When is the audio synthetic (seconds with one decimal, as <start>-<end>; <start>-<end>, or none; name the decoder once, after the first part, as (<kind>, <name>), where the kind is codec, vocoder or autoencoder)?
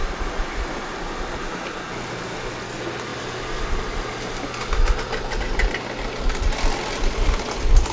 none